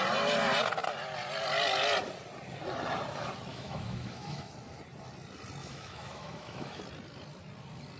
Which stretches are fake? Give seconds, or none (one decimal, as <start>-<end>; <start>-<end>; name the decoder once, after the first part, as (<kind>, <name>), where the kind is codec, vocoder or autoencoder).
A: 3.5-4.5 (autoencoder, DAC-VAE); 5.6-6.8